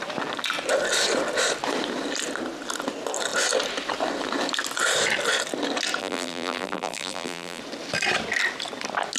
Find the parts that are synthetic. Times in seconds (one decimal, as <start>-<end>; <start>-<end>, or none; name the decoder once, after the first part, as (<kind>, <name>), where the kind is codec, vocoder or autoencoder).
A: 6.0-7.6 (vocoder, BigVGAN v2)